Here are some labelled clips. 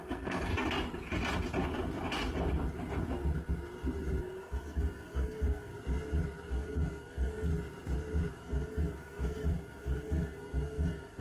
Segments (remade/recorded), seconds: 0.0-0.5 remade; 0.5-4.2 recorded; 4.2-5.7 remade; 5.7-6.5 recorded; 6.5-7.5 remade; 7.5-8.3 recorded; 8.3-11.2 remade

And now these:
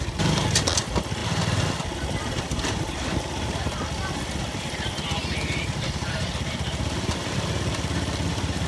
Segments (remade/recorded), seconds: 0.0-1.2 remade; 1.2-2.4 recorded; 2.4-8.7 remade

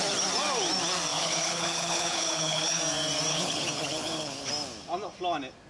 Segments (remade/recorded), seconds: 0.0-1.1 recorded; 1.1-2.8 remade; 2.8-3.3 recorded; 3.3-4.5 remade; 4.5-5.7 recorded

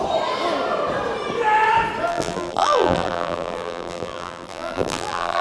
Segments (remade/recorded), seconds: 0.0-2.1 recorded; 2.1-5.4 remade

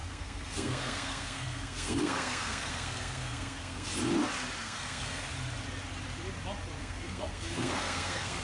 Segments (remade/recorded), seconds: 0.0-3.9 remade; 3.9-4.6 recorded; 4.6-5.3 remade; 5.3-6.8 recorded; 6.8-8.4 remade